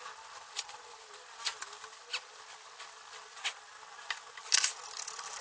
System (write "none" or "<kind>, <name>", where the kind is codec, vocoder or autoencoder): none